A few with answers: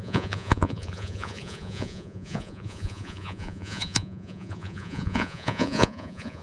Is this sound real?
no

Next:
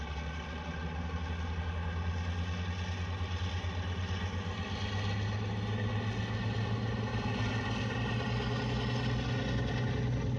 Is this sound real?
yes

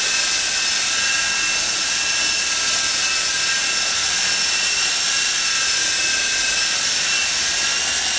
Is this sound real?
yes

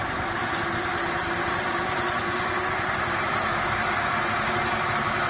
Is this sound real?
yes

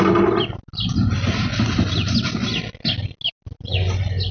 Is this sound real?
yes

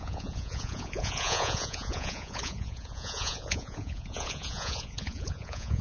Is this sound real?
no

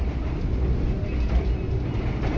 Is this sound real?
yes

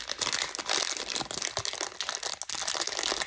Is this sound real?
yes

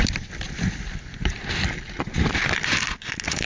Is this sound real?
yes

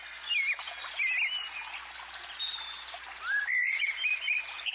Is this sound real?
yes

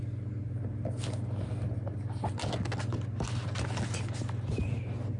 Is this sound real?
yes